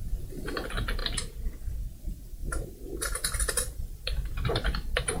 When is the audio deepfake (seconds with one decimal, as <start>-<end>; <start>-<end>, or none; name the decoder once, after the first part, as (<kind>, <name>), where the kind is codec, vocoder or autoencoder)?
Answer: 0.0-1.0 (vocoder, BigVGAN v2); 2.0-5.2